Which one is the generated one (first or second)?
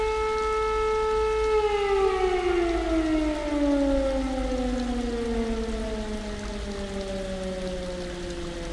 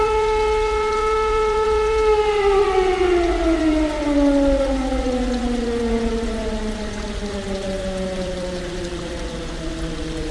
second